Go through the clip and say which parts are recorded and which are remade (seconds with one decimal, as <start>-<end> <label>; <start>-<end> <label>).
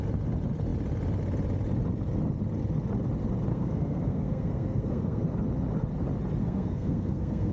0.0-3.5 recorded; 3.5-5.2 remade; 5.2-6.4 recorded; 6.4-7.5 remade